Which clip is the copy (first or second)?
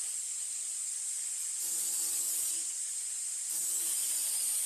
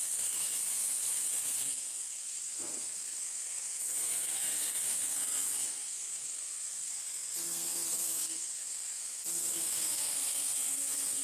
second